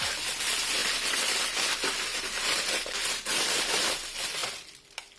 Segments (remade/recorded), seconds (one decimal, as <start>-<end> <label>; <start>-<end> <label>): 0.0-2.1 recorded; 2.1-2.7 remade; 2.7-5.2 recorded